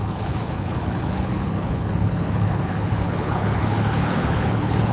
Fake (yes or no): yes